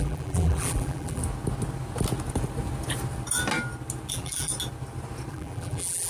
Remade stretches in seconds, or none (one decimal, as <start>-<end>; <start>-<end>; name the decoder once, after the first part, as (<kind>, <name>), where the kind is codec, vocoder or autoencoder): 0.0-1.2 (vocoder, BigVGAN v2); 4.1-4.5; 5.3-6.1